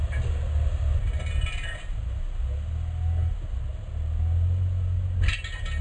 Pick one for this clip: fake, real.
real